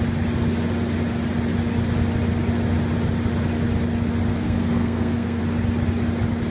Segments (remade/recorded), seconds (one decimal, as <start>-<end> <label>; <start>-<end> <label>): 0.0-4.3 recorded; 4.3-5.4 remade; 5.4-6.5 recorded